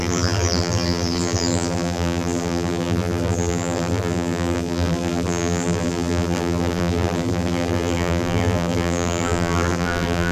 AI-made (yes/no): yes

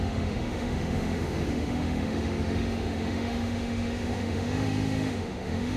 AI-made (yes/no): yes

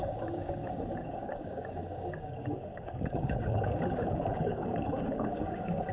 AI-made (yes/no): yes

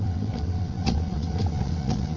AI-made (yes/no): yes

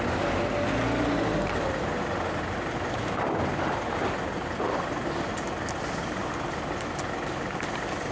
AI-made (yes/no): no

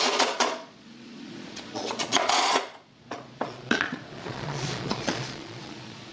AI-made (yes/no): yes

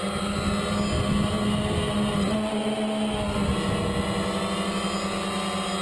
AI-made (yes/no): no